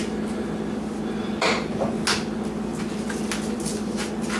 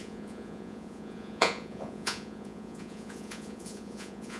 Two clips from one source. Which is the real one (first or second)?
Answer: first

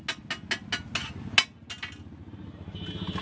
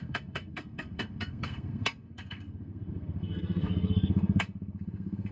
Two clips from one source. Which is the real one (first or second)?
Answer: first